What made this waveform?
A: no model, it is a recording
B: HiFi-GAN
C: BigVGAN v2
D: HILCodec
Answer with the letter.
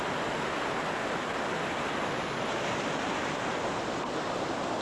A